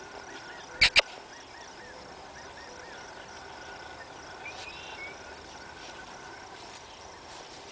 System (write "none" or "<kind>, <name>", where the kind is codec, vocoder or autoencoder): none